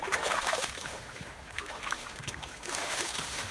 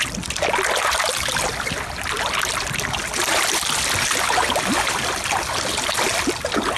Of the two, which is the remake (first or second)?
first